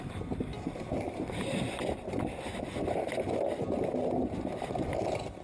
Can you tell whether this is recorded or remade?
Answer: recorded